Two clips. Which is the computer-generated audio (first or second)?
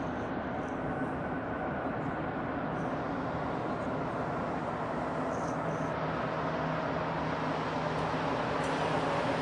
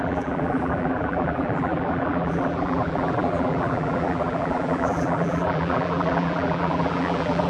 second